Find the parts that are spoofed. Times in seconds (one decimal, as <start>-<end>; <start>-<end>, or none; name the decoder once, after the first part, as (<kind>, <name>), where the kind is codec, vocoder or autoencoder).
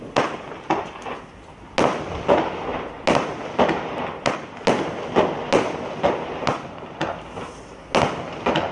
none